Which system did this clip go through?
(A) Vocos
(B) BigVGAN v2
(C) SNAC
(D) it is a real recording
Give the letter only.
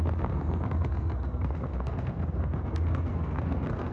C